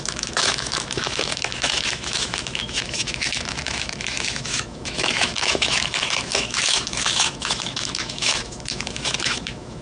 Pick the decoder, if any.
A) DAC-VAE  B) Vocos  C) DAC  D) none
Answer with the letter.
A